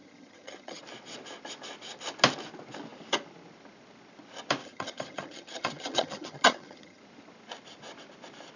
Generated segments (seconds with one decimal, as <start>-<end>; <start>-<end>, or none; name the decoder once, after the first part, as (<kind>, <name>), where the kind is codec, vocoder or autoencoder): 0.0-0.8 (vocoder, HiFi-GAN); 4.6-7.0